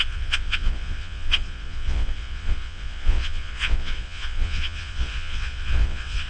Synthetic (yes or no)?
yes